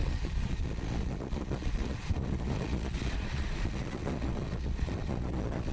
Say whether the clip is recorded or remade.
remade